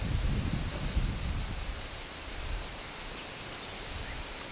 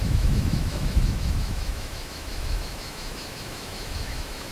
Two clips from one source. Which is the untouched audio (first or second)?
first